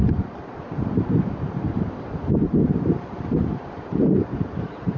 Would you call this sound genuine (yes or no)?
no